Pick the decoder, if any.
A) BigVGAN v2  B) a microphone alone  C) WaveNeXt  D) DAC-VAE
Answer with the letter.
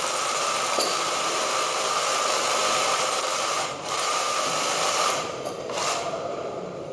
A